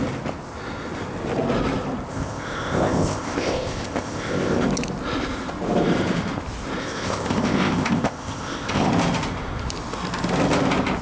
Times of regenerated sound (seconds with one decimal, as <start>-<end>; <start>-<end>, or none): 2.1-4.6; 6.8-8.9